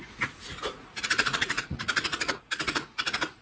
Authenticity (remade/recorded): remade